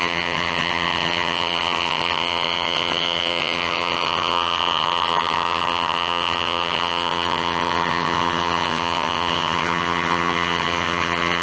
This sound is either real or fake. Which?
fake